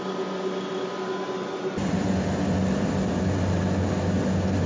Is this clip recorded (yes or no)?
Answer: yes